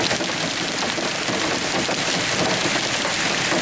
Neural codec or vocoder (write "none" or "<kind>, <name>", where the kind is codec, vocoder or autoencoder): none